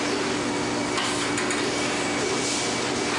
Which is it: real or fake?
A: real